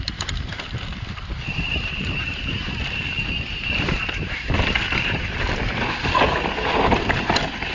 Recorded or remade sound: remade